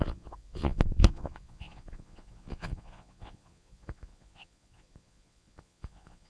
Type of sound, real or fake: fake